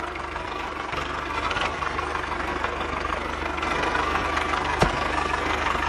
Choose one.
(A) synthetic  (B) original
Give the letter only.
A